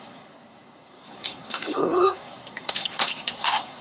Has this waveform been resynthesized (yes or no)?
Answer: yes